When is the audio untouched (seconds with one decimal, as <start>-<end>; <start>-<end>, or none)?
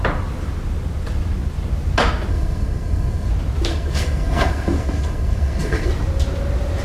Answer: 0.0-2.3; 3.3-3.7; 5.9-6.8